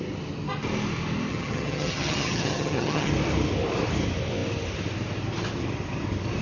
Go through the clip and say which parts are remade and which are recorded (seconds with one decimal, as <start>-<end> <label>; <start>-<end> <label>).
0.0-1.3 recorded; 1.3-3.1 remade; 3.1-6.4 recorded